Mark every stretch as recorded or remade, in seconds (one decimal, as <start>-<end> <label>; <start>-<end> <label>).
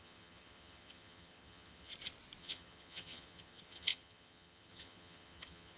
0.0-1.9 remade; 1.9-2.4 recorded; 2.4-5.8 remade